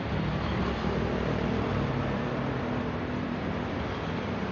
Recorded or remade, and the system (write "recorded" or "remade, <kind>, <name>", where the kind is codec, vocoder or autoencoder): remade, vocoder, BigVGAN v2